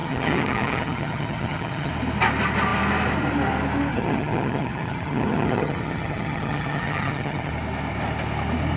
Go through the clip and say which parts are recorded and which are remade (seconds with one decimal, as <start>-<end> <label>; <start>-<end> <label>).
0.0-1.9 remade; 1.9-3.9 recorded; 3.9-7.5 remade; 7.5-8.8 recorded